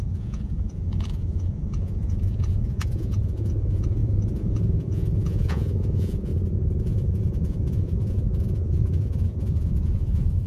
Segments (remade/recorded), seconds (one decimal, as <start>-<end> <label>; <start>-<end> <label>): 0.0-6.3 remade; 6.3-6.8 recorded; 6.8-10.5 remade